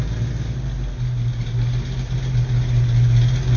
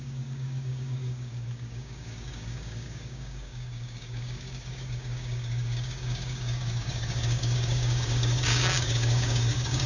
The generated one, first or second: second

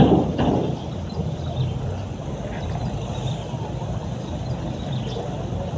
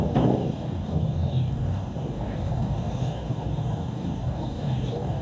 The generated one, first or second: second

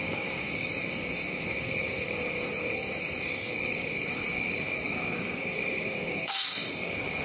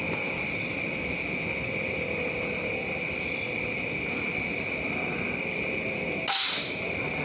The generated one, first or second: first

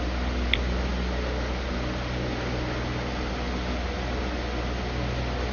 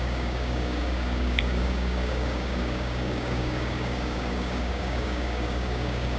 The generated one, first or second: second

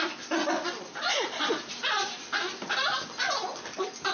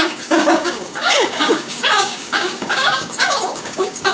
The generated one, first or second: second